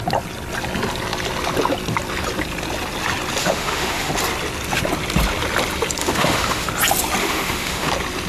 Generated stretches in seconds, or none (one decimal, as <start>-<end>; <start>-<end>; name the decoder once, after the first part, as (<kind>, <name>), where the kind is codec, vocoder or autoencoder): 3.4-4.1 (autoencoder, DAC-VAE); 6.0-6.7; 7.2-7.9